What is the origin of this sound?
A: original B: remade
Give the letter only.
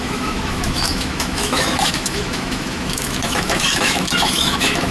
B